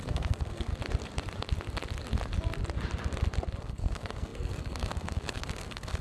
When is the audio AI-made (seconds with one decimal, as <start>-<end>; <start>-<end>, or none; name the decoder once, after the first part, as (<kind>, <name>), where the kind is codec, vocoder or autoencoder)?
0.0-0.7 (codec, SNAC); 3.6-6.0